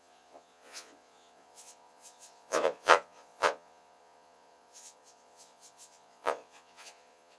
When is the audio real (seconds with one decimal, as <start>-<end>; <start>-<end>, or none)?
none